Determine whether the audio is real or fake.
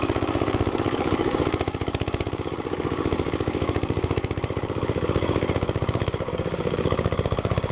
fake